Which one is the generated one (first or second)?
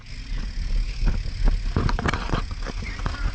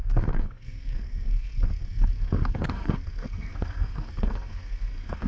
second